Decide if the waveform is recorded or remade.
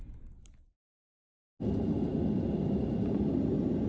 recorded